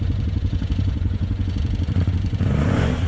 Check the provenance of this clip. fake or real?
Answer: fake